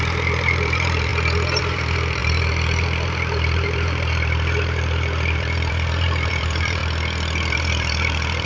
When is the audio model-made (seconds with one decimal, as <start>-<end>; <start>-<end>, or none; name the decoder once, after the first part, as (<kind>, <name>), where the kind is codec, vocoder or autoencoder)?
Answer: 0.0-1.1 (vocoder, BigVGAN v2); 1.6-6.8; 7.5-8.4